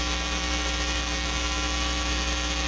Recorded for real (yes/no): no